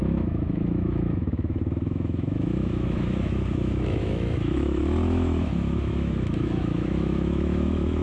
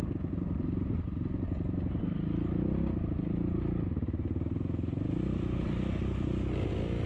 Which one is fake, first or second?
first